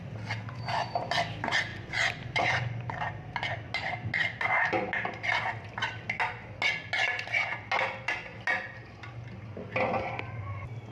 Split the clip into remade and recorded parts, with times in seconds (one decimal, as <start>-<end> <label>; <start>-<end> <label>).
0.0-1.7 recorded; 1.7-2.9 remade; 2.9-10.9 recorded